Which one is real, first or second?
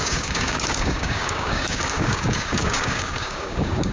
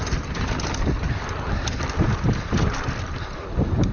second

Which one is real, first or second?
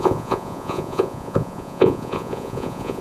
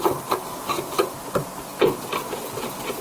second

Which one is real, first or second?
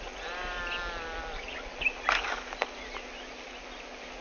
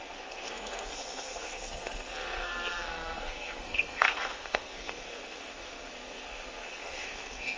first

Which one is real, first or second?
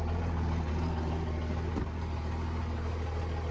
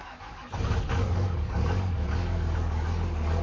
first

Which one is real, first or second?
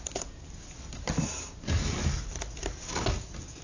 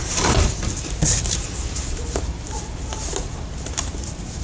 first